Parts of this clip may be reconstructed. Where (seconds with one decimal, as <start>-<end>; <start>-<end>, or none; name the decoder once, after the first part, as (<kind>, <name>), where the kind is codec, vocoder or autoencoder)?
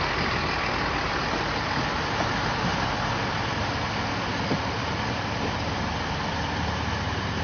none